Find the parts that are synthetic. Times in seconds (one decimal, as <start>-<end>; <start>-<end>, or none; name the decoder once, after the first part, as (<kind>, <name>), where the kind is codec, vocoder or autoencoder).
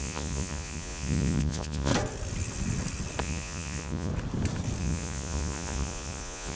0.0-1.9 (vocoder, Vocos); 3.2-4.1; 4.8-6.6